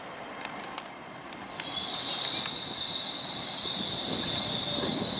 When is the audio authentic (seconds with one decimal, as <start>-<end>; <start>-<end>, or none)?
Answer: 0.0-5.2